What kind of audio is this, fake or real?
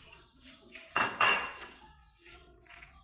fake